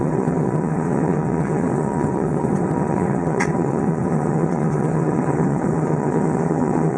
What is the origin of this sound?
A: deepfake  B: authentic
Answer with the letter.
A